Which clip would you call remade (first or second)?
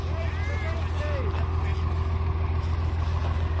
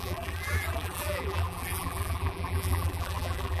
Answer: second